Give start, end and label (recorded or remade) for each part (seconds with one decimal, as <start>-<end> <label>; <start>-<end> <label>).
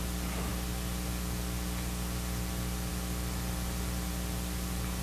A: 0.0-5.0 recorded